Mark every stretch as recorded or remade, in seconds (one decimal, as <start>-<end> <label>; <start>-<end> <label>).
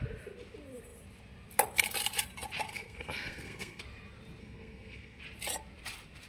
0.0-2.7 recorded; 2.7-3.8 remade; 3.8-4.4 recorded; 4.4-5.2 remade; 5.2-6.3 recorded